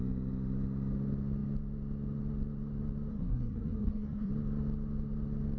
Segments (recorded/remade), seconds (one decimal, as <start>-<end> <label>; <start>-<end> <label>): 0.0-3.1 recorded; 3.1-4.3 remade; 4.3-5.6 recorded